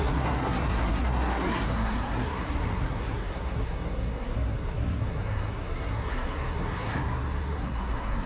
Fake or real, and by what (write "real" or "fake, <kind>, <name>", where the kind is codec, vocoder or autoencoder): fake, codec, SNAC